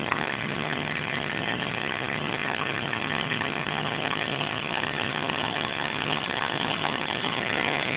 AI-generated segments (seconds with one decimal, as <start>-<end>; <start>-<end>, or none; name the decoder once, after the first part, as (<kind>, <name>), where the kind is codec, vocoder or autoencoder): 0.0-8.0 (vocoder, HiFi-GAN)